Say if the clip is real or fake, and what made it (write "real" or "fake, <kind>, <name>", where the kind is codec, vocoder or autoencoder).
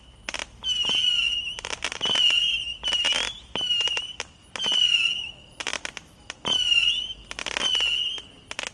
real